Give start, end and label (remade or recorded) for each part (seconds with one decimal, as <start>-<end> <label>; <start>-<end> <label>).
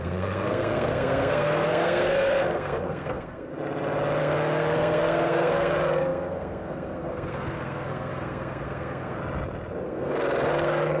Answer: 0.0-3.5 remade; 3.5-4.2 recorded; 4.2-9.2 remade; 9.2-9.8 recorded; 9.8-11.0 remade